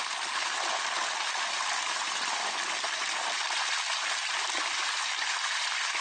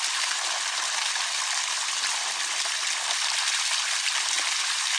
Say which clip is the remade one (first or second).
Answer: second